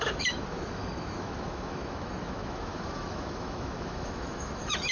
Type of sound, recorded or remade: remade